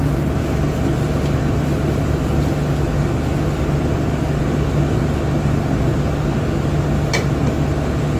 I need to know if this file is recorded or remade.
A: recorded